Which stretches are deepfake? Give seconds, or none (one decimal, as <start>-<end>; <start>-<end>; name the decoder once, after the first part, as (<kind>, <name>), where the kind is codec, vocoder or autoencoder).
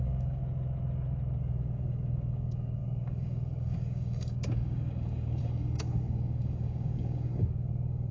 0.0-0.4 (codec, DAC); 1.4-8.1